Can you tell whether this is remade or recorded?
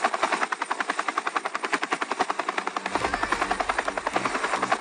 recorded